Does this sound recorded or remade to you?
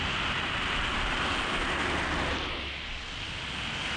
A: recorded